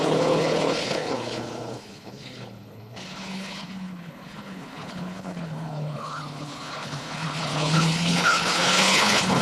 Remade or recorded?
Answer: remade